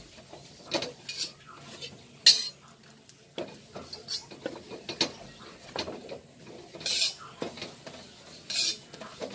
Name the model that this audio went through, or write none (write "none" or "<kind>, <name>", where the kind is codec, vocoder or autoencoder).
none